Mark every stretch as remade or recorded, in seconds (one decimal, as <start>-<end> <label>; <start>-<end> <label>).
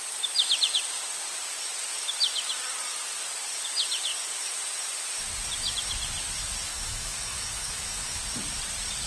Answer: 0.0-6.7 recorded; 6.7-8.2 remade; 8.2-9.1 recorded